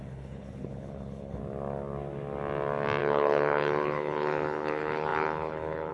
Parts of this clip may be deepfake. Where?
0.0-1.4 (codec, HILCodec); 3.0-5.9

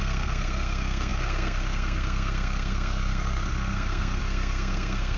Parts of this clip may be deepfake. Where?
0.0-5.2 (codec, SNAC)

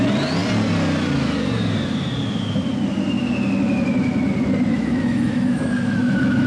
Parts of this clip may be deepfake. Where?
4.7-6.5 (autoencoder, DAC-VAE)

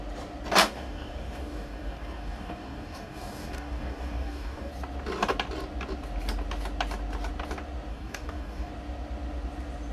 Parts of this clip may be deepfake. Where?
0.6-4.7 (codec, DAC); 7.9-8.7

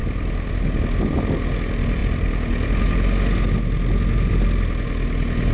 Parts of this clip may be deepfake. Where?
none